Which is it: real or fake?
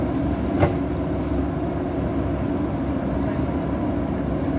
real